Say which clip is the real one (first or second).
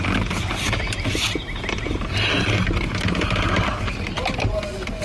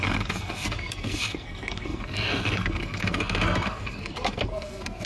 first